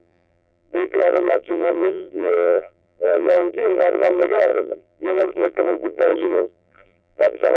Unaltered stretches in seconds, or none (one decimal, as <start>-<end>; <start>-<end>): none